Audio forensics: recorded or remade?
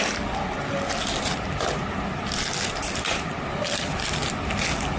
recorded